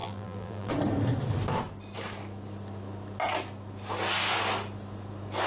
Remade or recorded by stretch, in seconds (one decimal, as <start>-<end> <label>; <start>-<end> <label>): 0.0-0.7 remade; 0.7-5.5 recorded